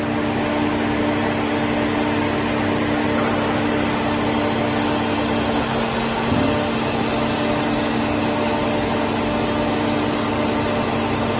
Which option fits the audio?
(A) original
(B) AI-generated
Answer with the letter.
A